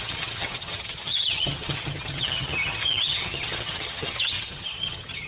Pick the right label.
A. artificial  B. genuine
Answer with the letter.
A